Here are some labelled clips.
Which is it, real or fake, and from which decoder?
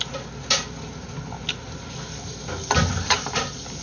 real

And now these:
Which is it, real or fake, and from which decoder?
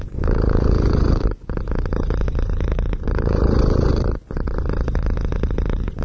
fake, vocoder, Vocos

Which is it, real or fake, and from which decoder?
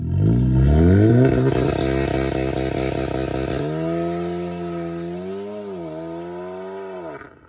real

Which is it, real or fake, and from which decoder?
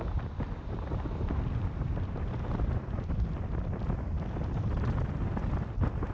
real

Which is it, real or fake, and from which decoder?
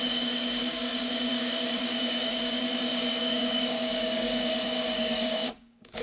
fake, codec, DAC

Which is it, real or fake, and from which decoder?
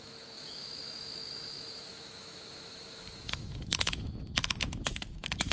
fake, autoencoder, DAC-VAE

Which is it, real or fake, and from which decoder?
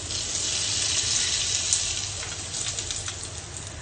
real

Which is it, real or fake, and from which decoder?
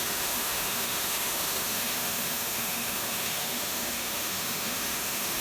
fake, autoencoder, DAC-VAE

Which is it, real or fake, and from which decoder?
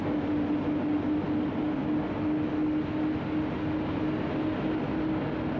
real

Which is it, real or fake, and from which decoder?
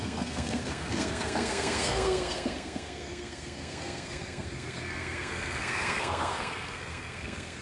fake, codec, SNAC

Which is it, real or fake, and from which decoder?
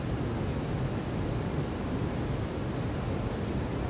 real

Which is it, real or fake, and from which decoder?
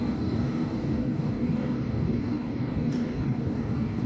fake, codec, DAC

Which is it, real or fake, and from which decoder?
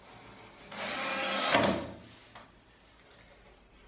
real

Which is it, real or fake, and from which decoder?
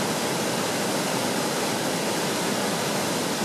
real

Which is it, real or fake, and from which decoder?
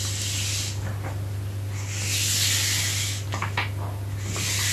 real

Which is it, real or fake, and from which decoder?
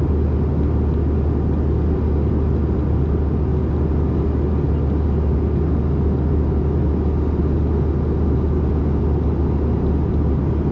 real